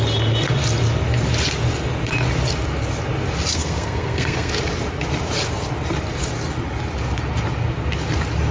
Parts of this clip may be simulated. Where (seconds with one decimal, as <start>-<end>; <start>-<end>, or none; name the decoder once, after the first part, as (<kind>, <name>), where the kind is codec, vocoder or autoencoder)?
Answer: 3.5-4.5 (codec, SNAC)